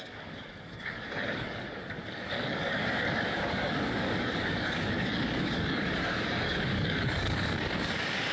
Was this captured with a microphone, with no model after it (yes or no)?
no